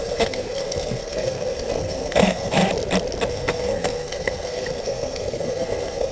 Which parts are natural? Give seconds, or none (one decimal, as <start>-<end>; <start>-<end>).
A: 2.6-3.3